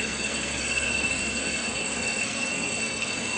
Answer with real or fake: fake